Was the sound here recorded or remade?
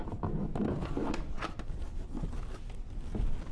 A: recorded